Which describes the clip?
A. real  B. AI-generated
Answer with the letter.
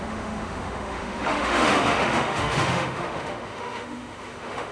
B